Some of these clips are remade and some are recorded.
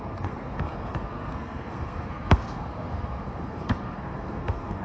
remade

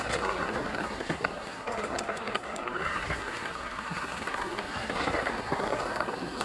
remade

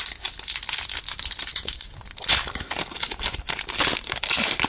recorded